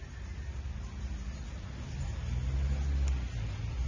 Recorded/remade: recorded